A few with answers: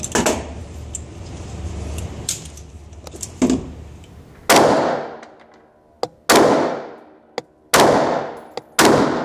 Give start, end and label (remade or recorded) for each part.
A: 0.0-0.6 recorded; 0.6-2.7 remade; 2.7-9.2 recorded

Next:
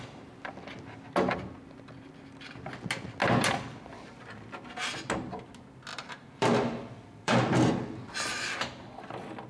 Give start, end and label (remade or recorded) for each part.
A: 0.0-5.9 recorded; 5.9-8.1 remade; 8.1-9.5 recorded

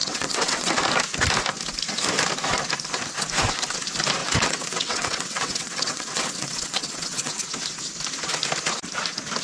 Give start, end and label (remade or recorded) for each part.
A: 0.0-0.7 remade; 0.7-4.2 recorded; 4.2-7.3 remade; 7.3-9.4 recorded